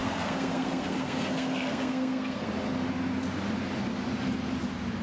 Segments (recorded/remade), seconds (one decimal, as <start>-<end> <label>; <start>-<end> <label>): 0.0-2.5 remade; 2.5-5.0 recorded